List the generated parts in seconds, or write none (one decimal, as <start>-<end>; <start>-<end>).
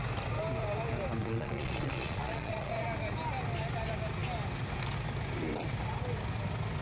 1.2-2.7